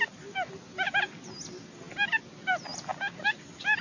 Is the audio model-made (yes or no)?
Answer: no